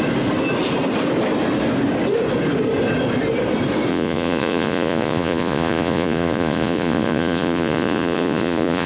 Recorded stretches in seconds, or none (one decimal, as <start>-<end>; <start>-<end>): 0.0-3.9